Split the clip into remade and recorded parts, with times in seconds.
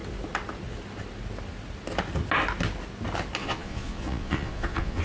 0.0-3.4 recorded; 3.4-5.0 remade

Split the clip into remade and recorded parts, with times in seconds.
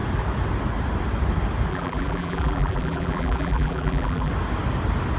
0.0-1.7 recorded; 1.7-4.3 remade; 4.3-5.2 recorded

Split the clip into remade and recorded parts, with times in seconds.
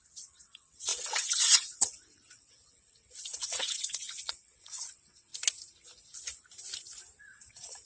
0.0-5.3 remade; 5.3-7.2 recorded; 7.2-7.8 remade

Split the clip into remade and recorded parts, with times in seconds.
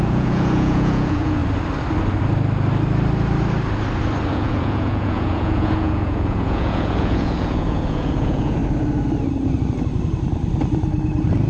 0.0-1.4 remade; 1.4-4.3 recorded; 4.3-8.6 remade; 8.6-11.5 recorded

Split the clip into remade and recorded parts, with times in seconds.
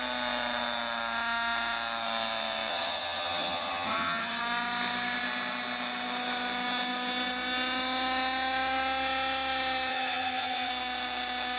0.0-2.7 recorded; 2.7-4.4 remade; 4.4-9.9 recorded; 9.9-10.7 remade; 10.7-11.6 recorded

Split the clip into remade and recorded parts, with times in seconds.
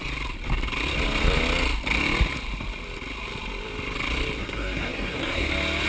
0.0-4.4 recorded; 4.4-5.5 remade; 5.5-5.9 recorded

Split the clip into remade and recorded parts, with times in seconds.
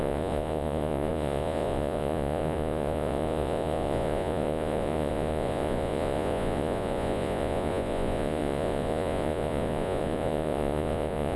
0.0-11.4 remade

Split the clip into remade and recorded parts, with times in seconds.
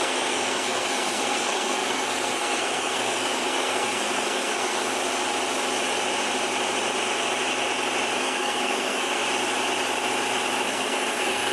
0.0-4.9 remade; 4.9-8.2 recorded; 8.2-9.2 remade; 9.2-10.7 recorded; 10.7-11.5 remade